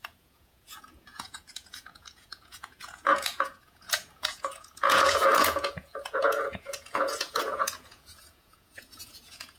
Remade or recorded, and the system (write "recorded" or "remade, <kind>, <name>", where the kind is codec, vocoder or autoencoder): remade, vocoder, Vocos